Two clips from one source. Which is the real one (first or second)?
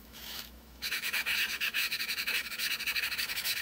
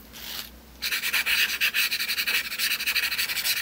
second